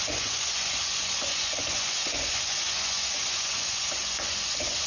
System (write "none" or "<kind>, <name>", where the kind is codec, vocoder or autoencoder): vocoder, Vocos